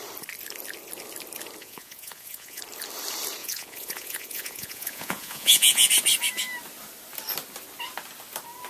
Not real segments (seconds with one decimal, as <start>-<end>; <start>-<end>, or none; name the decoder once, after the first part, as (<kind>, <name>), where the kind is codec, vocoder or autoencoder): 1.6-2.6 (vocoder, Vocos); 3.4-5.9